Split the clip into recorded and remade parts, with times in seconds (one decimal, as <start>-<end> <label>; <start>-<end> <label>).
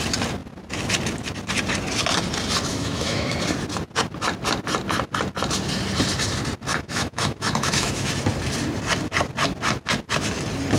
0.0-2.7 recorded; 2.7-3.3 remade; 3.3-6.7 recorded; 6.7-8.1 remade; 8.1-10.8 recorded